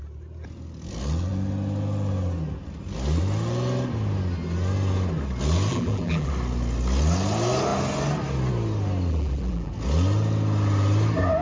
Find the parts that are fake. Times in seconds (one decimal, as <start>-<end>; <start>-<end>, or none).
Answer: 5.7-6.3; 9.1-9.7